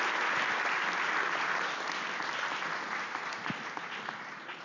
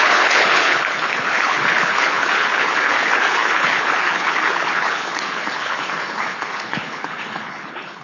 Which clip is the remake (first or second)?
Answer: second